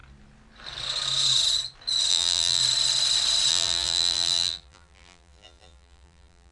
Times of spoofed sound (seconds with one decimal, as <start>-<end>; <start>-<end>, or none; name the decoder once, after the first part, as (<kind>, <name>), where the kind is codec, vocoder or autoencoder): 2.1-2.6 (vocoder, BigVGAN v2); 3.5-6.5